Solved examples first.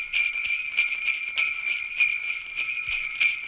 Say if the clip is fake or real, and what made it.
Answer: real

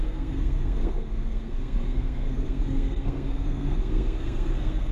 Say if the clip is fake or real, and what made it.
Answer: fake, codec, SNAC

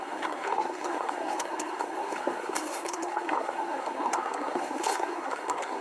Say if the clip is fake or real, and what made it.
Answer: fake, codec, SNAC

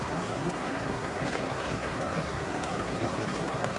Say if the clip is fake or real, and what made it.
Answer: fake, codec, SNAC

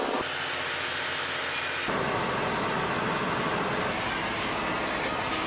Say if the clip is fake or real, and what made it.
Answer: real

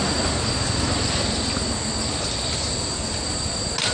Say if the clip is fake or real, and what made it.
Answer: real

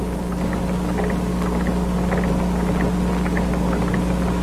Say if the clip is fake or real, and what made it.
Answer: real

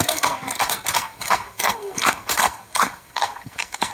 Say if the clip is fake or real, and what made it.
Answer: fake, codec, SNAC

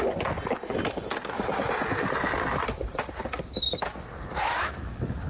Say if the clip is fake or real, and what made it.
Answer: real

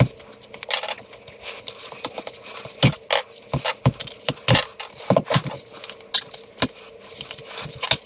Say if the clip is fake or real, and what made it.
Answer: real